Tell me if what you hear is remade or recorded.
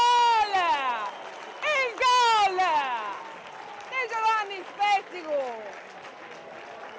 recorded